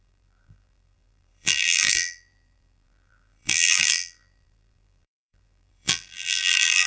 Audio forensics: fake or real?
fake